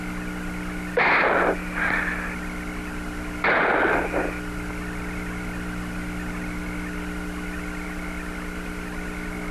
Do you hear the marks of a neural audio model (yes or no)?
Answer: no